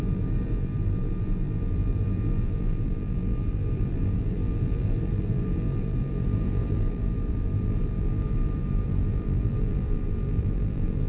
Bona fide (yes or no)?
no